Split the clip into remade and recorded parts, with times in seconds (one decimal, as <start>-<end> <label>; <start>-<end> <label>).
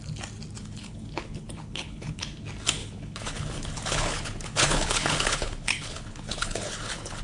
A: 0.0-0.6 recorded; 0.6-2.4 remade; 2.4-2.8 recorded; 2.8-7.2 remade